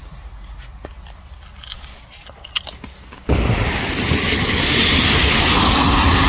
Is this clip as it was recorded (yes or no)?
yes